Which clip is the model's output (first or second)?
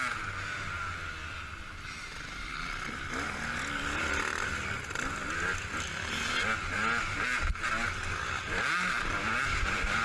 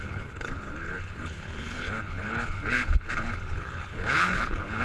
second